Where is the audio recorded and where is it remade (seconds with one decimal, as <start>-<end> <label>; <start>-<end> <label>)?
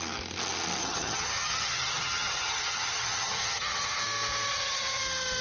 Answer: 0.0-0.8 recorded; 0.8-4.0 remade; 4.0-4.5 recorded; 4.5-5.0 remade; 5.0-5.4 recorded